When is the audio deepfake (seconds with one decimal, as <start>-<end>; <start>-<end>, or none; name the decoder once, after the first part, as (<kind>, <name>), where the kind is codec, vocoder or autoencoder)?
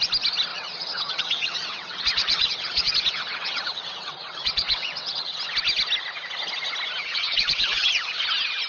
0.5-5.4 (vocoder, WaveNeXt); 7.0-8.2